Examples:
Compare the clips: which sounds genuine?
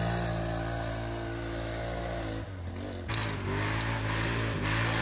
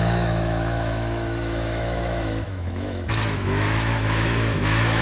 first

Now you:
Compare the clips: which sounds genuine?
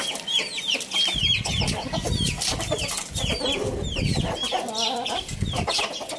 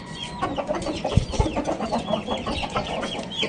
first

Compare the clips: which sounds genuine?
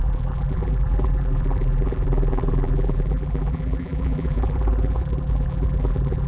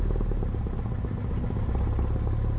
second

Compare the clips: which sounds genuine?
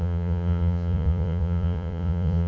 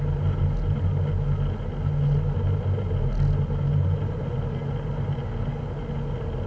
second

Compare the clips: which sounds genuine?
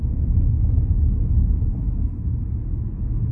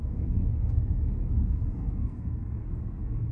first